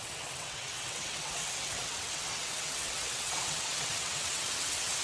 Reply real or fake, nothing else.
fake